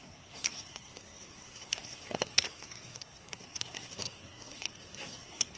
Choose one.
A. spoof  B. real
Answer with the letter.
A